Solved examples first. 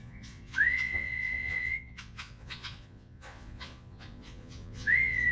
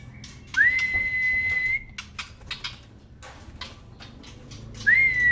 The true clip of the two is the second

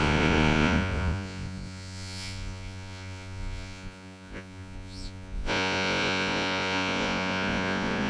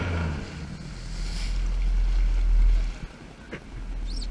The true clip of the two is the second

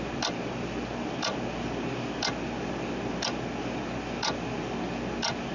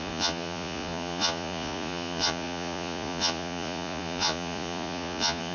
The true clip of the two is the first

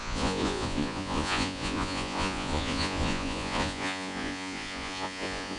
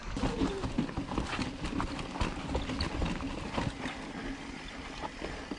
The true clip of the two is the second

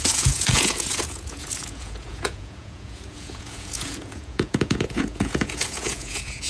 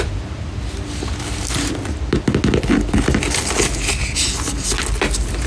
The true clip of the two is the second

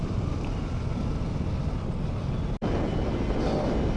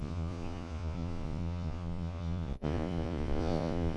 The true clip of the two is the first